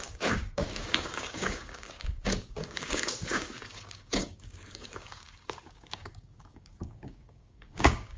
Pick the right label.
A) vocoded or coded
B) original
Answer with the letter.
A